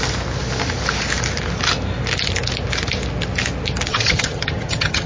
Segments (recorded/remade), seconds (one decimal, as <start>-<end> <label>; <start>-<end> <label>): 0.0-3.9 recorded; 3.9-5.1 remade